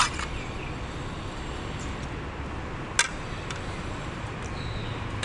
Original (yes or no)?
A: yes